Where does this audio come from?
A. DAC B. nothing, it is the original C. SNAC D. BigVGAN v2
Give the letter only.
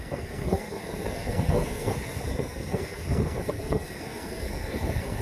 C